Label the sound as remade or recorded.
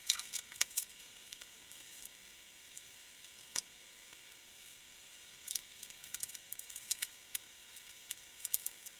remade